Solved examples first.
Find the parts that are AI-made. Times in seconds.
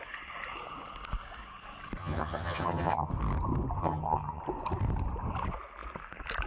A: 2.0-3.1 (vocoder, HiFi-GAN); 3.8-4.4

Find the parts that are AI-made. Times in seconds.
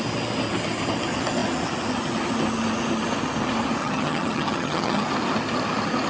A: 3.8-5.0 (vocoder, HiFi-GAN)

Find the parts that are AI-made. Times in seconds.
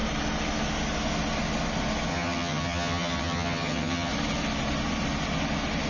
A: 2.1-4.1 (vocoder, HiFi-GAN)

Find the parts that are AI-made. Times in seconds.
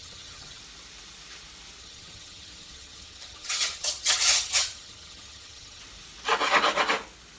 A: 0.0-0.6 (vocoder, HiFi-GAN); 1.8-5.8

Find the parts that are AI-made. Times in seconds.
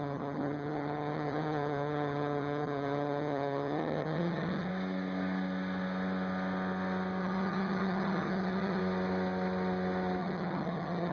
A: 0.0-4.7 (vocoder, HiFi-GAN); 7.2-8.8; 10.2-11.1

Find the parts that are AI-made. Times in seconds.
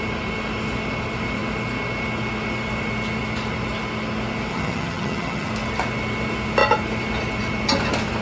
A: 4.5-5.5 (vocoder, HiFi-GAN)